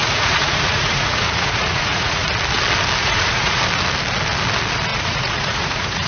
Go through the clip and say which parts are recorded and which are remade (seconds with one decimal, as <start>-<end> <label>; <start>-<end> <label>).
0.0-2.3 remade; 2.3-3.0 recorded; 3.0-3.6 remade; 3.6-4.9 recorded; 4.9-6.1 remade